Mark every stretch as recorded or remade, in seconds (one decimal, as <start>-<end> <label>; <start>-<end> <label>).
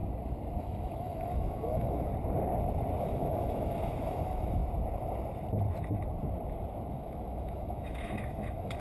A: 0.0-0.6 recorded; 0.6-2.1 remade; 2.1-3.0 recorded; 3.0-4.6 remade; 4.6-6.9 recorded; 6.9-8.8 remade